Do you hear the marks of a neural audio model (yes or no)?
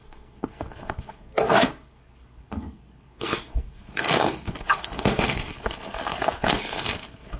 yes